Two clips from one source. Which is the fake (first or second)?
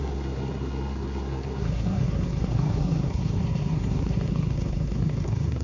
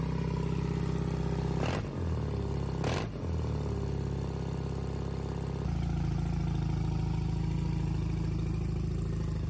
first